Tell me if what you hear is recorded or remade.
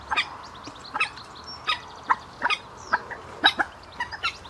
recorded